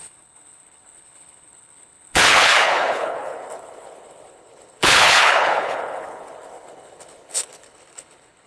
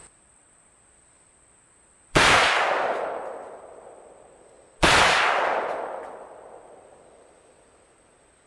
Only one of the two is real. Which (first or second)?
second